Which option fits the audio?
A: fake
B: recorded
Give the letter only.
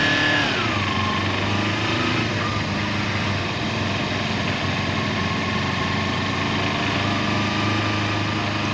B